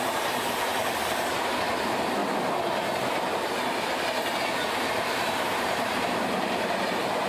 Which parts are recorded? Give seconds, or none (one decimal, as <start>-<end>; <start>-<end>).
2.2-4.9